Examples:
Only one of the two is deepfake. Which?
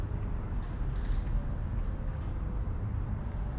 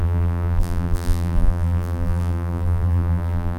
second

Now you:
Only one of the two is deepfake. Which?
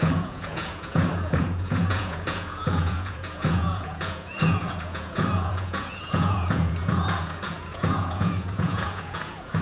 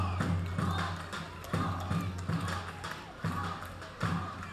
first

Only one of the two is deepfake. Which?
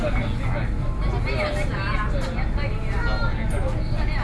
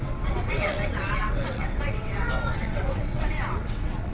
second